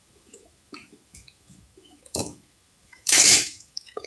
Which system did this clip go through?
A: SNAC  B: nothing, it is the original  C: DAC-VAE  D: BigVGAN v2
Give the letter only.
C